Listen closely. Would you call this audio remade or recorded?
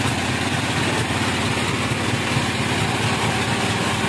recorded